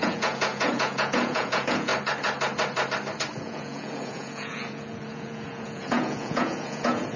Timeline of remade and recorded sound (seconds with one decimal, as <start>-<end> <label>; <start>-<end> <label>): 0.0-1.9 remade; 1.9-3.4 recorded; 3.4-7.2 remade